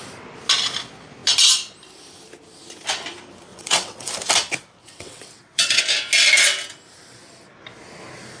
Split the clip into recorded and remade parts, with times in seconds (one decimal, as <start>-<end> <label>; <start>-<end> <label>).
0.0-3.5 recorded; 3.5-4.1 remade; 4.1-4.8 recorded; 4.8-5.8 remade; 5.8-8.4 recorded